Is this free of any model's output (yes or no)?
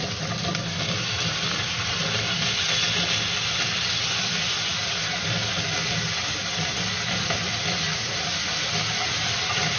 yes